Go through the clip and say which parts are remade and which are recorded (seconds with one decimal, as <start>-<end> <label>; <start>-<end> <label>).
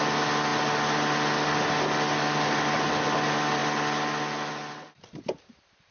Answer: 0.0-0.5 remade; 0.5-2.3 recorded; 2.3-3.6 remade; 3.6-4.5 recorded; 4.5-5.9 remade